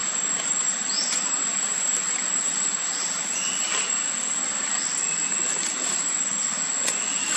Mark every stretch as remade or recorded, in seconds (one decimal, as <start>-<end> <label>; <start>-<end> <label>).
0.0-3.9 remade; 3.9-5.7 recorded; 5.7-6.3 remade; 6.3-7.4 recorded